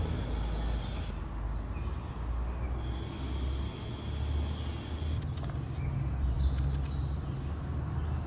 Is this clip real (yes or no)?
yes